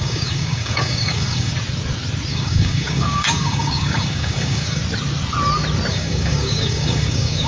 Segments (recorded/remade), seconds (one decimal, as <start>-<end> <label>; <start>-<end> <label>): 0.0-1.5 remade; 1.5-2.3 recorded; 2.3-4.8 remade; 4.8-5.9 recorded; 5.9-7.5 remade